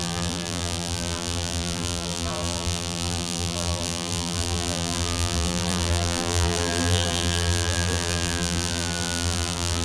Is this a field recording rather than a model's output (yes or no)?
no